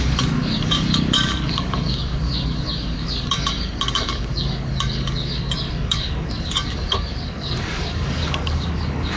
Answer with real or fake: fake